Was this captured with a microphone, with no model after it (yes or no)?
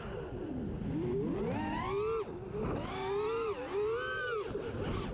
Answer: yes